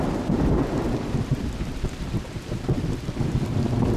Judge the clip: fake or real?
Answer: fake